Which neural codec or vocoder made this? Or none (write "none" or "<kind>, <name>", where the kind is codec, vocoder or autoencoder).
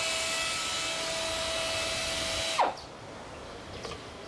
none